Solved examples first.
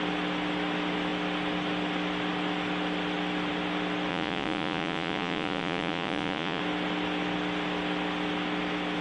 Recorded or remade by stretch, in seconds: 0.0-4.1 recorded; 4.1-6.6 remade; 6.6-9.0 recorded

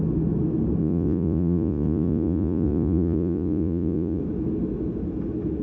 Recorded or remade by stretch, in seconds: 0.0-0.8 recorded; 0.8-4.2 remade; 4.2-5.6 recorded

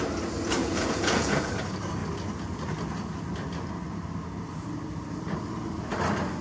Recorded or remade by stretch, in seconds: 0.0-0.6 recorded; 0.6-1.5 remade; 1.5-6.4 recorded

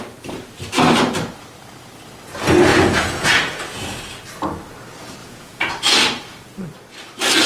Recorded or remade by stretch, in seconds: 0.0-2.7 recorded; 2.7-3.8 remade; 3.8-5.2 recorded; 5.2-5.7 remade; 5.7-7.5 recorded

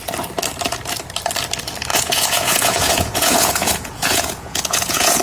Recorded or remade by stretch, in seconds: 0.0-1.9 recorded; 1.9-5.2 remade

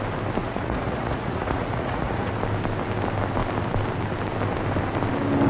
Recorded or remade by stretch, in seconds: 0.0-0.4 recorded; 0.4-2.3 remade; 2.3-5.5 recorded